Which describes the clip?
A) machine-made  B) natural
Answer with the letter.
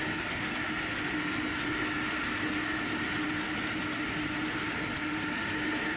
B